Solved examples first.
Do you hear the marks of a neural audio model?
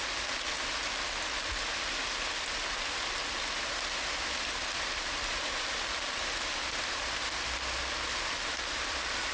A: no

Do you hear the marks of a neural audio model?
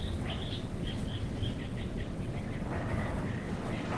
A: yes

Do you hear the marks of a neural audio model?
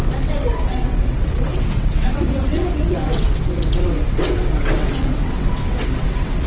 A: yes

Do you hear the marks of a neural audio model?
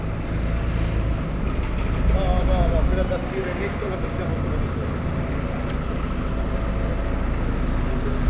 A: no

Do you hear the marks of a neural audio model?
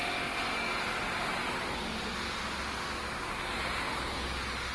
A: no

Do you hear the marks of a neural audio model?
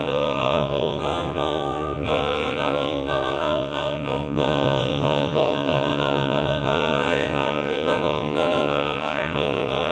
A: yes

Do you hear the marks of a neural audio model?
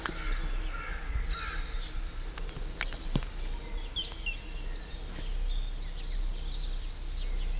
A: no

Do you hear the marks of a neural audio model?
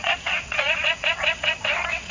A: yes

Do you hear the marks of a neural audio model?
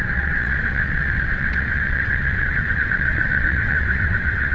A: yes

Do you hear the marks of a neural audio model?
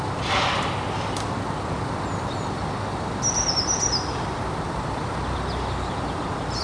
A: no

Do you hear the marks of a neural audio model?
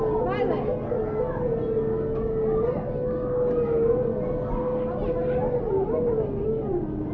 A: no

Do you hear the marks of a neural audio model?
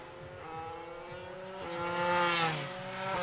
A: no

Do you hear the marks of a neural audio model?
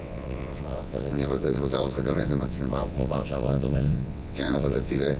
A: yes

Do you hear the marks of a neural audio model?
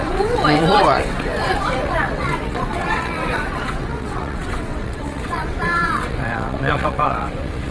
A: yes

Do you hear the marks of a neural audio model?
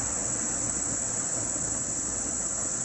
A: yes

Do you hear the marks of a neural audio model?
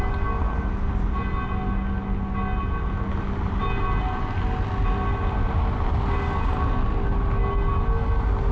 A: no